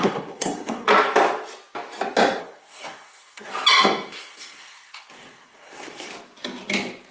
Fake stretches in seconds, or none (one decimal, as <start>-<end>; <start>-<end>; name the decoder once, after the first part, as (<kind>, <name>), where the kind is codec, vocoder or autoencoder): 0.0-0.9 (codec, SNAC); 2.4-3.5; 4.1-6.1